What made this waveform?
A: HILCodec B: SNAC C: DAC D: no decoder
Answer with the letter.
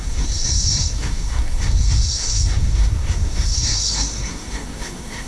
B